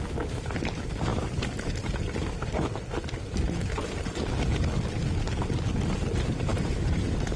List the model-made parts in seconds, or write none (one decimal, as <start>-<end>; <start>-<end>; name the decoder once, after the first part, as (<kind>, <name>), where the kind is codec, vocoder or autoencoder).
6.5-7.4 (vocoder, BigVGAN v2)